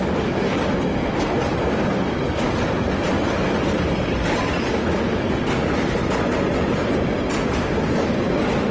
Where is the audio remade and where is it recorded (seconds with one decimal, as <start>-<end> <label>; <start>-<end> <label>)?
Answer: 0.0-8.7 recorded